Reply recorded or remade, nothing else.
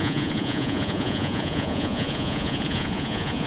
remade